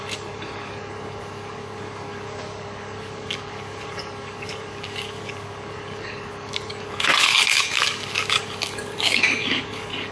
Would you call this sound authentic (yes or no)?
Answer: no